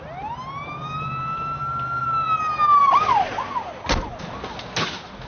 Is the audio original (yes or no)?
yes